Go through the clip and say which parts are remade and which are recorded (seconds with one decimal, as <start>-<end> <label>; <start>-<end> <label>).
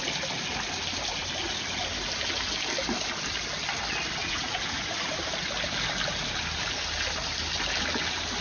0.0-4.2 recorded; 4.2-5.1 remade; 5.1-8.4 recorded